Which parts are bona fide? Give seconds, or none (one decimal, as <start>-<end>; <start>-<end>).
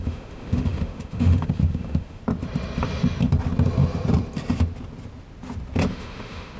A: 2.2-5.9